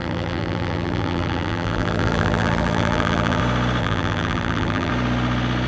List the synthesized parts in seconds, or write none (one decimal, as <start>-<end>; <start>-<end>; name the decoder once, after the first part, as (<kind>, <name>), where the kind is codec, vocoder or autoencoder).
0.0-3.4 (vocoder, BigVGAN v2); 3.8-4.9